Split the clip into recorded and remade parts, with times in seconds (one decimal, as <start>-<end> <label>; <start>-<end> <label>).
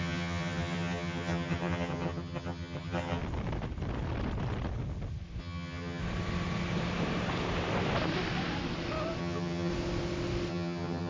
0.0-3.2 remade; 3.2-5.4 recorded; 5.4-6.0 remade; 6.0-9.2 recorded; 9.2-9.7 remade; 9.7-10.5 recorded; 10.5-11.1 remade